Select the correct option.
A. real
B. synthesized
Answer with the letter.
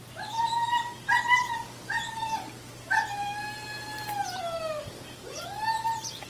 A